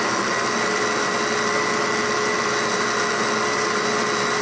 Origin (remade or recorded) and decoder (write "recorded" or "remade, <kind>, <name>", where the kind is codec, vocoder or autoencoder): recorded